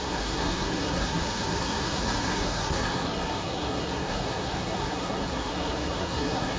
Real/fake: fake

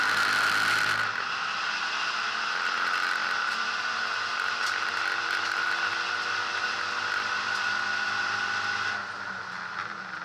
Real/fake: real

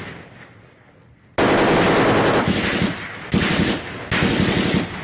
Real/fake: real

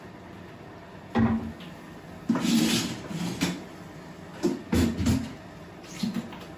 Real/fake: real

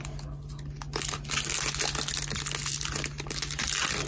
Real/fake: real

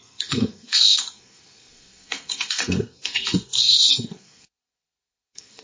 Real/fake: fake